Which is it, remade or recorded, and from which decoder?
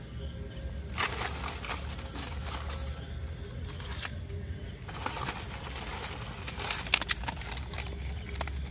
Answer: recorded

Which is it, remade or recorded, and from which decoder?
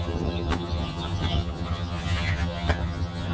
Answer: remade, vocoder, HiFi-GAN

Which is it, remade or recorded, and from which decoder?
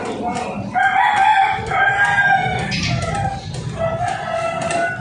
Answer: recorded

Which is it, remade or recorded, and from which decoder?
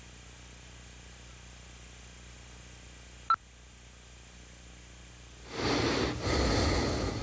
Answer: recorded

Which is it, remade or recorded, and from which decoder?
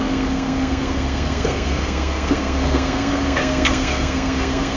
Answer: remade, codec, SNAC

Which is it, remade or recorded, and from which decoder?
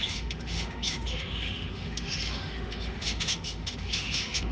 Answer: remade, autoencoder, DAC-VAE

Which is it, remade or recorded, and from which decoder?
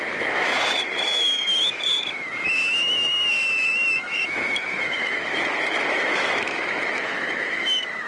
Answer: remade, autoencoder, DAC-VAE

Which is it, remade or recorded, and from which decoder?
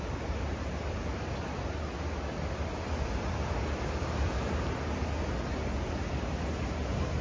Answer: recorded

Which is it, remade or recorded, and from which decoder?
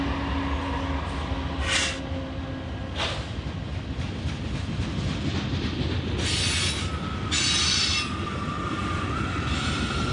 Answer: recorded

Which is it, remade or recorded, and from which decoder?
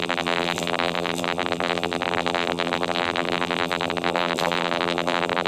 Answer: remade, vocoder, BigVGAN v2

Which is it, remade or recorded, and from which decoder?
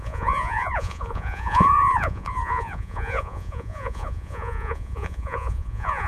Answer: remade, vocoder, Vocos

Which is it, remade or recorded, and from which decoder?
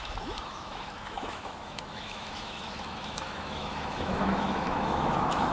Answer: remade, autoencoder, DAC-VAE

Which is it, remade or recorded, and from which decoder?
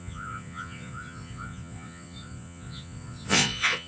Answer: remade, vocoder, Vocos